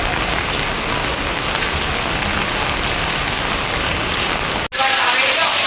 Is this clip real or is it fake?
real